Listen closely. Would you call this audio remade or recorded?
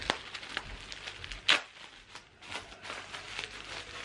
recorded